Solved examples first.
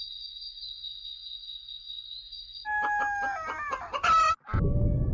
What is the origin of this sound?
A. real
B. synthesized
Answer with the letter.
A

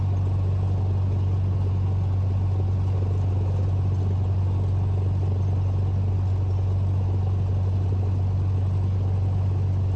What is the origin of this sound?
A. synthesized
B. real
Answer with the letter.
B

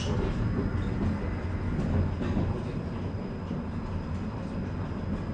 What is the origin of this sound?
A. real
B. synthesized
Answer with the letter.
A